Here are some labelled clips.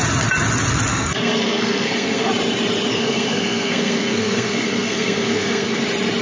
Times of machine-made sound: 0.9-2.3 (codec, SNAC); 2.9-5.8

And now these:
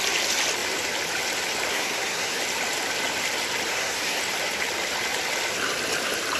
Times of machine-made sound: 1.7-2.4 (codec, SNAC); 3.7-4.2

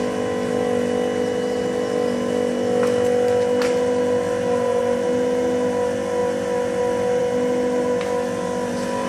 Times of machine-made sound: none

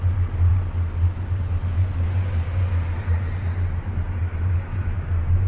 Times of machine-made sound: none